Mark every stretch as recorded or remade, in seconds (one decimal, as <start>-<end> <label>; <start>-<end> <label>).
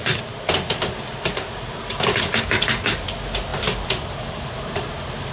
0.0-5.3 recorded